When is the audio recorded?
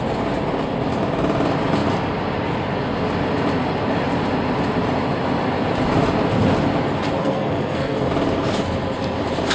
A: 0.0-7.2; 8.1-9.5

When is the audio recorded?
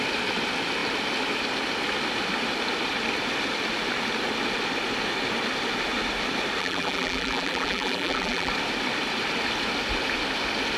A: 0.0-6.6; 8.5-10.8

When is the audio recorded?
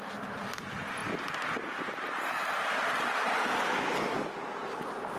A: 0.0-5.2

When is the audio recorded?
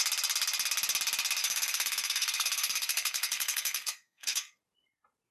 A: 0.0-1.4; 4.6-5.3